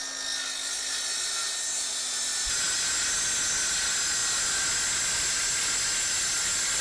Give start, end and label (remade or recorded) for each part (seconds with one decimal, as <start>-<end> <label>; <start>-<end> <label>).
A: 0.0-6.8 recorded